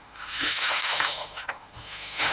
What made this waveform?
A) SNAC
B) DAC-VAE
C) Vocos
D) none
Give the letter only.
B